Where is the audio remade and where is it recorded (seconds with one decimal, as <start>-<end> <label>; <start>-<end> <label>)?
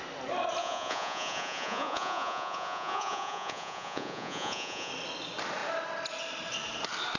0.0-0.6 recorded; 0.6-4.9 remade; 4.9-7.2 recorded